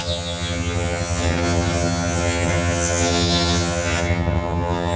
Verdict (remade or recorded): remade